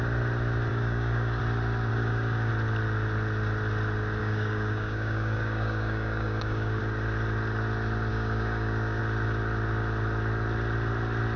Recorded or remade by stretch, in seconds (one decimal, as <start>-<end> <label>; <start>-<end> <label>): 0.0-0.7 recorded; 0.7-1.4 remade; 1.4-1.9 recorded; 1.9-2.5 remade; 2.5-4.2 recorded; 4.2-6.8 remade; 6.8-8.1 recorded; 8.1-9.0 remade; 9.0-11.4 recorded